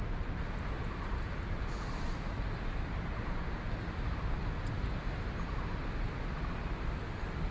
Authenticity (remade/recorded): recorded